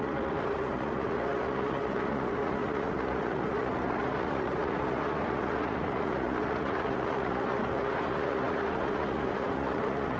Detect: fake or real fake